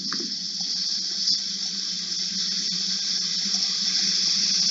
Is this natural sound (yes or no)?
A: yes